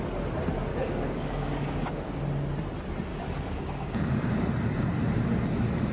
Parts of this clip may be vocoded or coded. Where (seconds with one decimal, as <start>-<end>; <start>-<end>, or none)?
0.7-2.2; 3.1-4.3